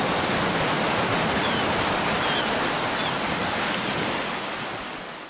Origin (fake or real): real